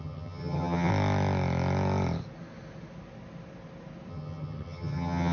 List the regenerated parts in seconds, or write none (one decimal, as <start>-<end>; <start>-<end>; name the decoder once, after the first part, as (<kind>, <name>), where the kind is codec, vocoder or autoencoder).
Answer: 0.0-0.9 (vocoder, HiFi-GAN); 4.1-5.3